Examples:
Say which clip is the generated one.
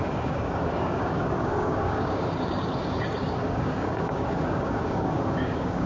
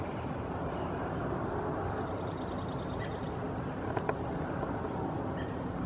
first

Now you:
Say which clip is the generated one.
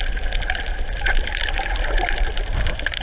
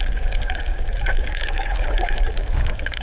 second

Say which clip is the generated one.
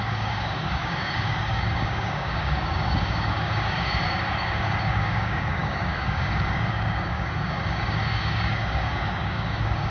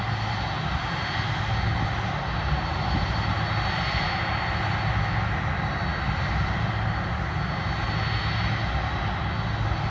first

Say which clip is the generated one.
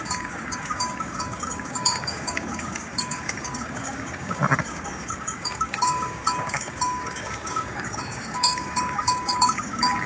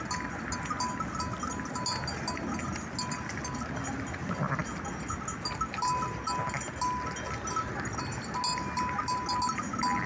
first